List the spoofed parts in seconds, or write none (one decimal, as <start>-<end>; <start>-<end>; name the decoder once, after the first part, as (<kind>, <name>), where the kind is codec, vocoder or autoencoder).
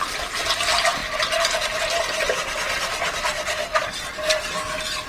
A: none